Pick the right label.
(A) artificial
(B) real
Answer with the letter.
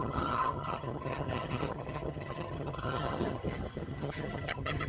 A